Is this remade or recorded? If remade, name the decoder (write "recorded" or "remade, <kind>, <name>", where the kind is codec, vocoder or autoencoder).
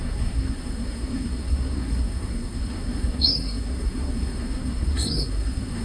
remade, codec, SNAC